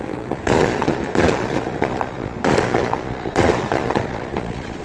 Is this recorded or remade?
remade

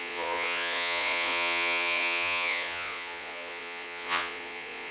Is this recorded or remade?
remade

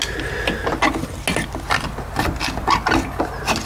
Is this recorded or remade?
recorded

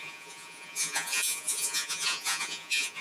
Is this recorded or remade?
remade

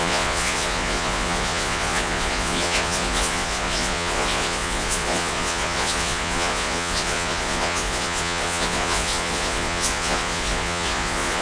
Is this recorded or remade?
remade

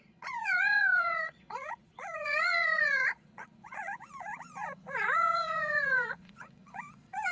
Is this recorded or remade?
remade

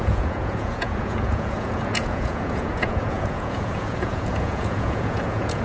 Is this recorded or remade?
remade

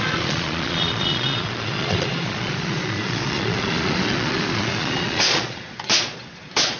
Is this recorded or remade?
remade